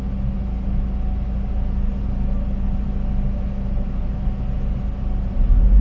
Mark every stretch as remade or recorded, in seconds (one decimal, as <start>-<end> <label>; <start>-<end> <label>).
0.0-5.8 recorded